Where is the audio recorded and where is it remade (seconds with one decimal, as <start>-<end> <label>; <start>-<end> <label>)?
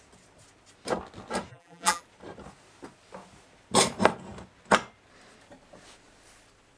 0.0-1.5 recorded; 1.5-2.0 remade; 2.0-6.8 recorded